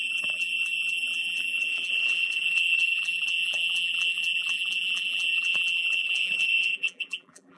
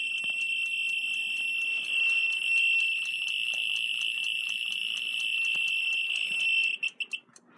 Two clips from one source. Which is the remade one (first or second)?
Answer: first